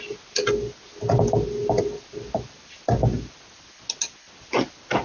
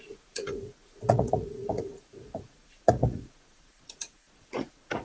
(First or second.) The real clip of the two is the first